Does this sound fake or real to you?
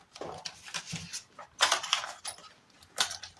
real